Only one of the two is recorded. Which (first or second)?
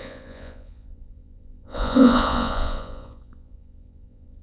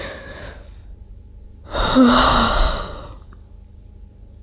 second